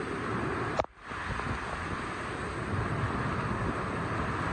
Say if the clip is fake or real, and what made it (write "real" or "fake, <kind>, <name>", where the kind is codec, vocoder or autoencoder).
real